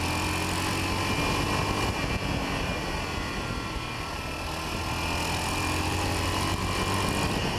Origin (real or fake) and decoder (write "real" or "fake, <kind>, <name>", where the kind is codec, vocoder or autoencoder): real